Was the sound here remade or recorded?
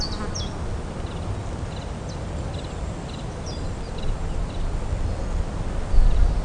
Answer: recorded